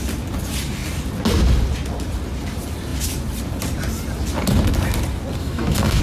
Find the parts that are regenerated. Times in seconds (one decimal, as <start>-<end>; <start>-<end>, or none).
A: 5.4-6.0